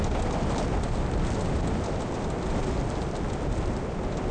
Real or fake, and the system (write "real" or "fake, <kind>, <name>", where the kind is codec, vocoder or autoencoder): real